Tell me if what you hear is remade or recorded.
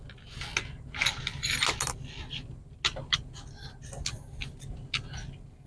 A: recorded